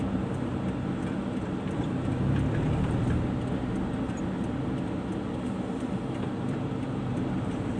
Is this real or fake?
real